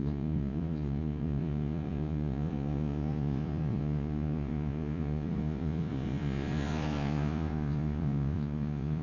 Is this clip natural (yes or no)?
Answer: no